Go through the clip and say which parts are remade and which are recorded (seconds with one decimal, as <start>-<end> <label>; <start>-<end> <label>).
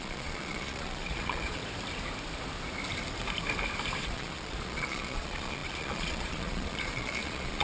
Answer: 0.0-1.6 remade; 1.6-4.0 recorded; 4.0-7.6 remade